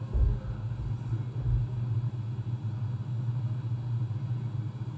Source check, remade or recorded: recorded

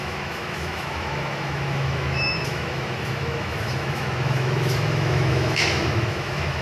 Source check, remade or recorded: remade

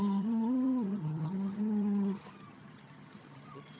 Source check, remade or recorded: remade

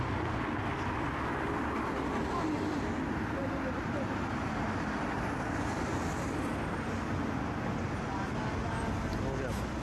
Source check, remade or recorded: recorded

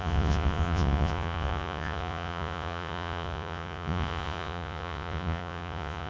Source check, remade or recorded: remade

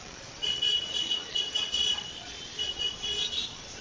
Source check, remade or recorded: remade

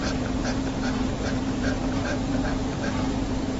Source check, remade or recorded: remade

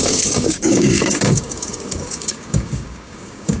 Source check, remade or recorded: remade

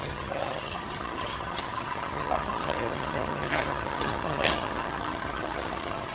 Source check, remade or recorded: remade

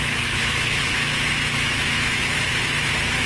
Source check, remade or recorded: remade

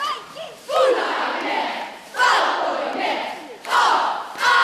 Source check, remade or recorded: remade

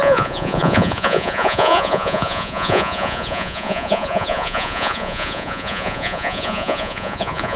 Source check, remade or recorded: remade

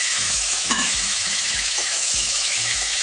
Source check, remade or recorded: remade